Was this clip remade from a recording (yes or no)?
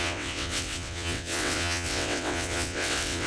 yes